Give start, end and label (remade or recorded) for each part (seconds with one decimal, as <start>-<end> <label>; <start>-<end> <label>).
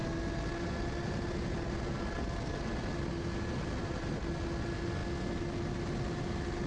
0.0-6.7 recorded